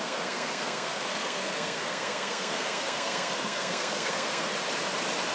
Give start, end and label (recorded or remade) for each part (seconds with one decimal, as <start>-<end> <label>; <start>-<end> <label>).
0.0-4.5 remade; 4.5-5.3 recorded